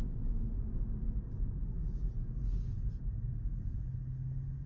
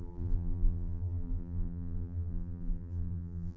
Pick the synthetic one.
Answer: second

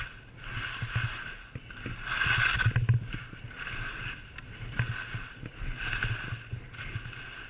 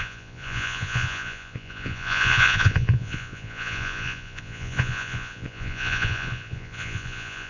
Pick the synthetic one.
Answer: second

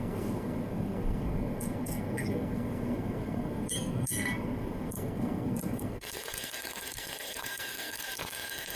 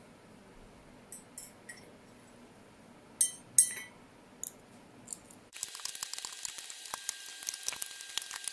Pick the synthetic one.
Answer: first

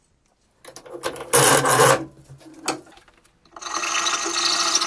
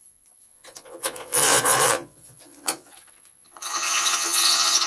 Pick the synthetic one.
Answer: second